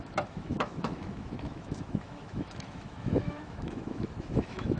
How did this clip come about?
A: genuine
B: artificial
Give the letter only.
B